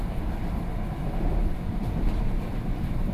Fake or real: real